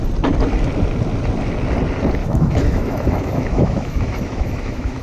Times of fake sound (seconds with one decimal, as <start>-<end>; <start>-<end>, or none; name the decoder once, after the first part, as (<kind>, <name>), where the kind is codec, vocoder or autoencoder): 2.2-5.0 (autoencoder, DAC-VAE)